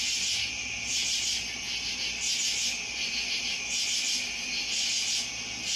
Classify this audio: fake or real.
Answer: real